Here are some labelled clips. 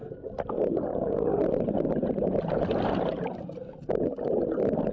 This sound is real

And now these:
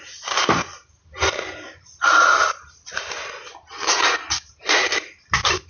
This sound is fake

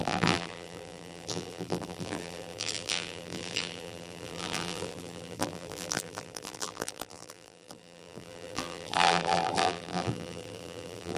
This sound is fake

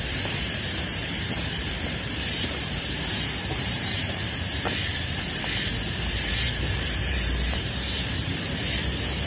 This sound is fake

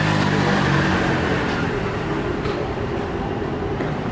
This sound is fake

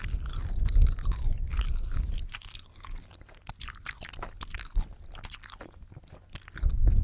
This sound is fake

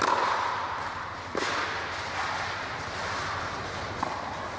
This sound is real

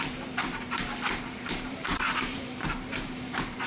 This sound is fake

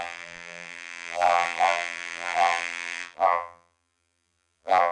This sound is fake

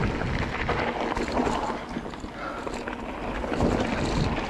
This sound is real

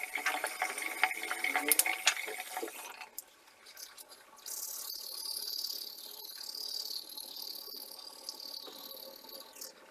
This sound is real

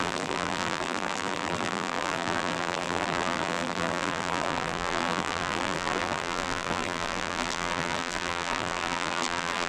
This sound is fake